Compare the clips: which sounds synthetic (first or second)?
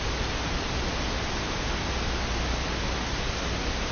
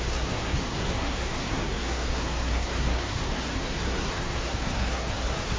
second